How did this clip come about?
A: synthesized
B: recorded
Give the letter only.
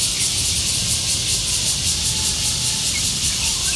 B